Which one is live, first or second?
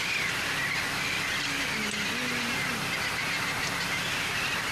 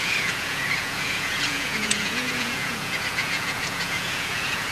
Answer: first